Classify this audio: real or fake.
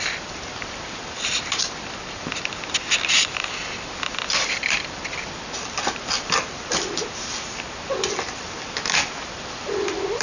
fake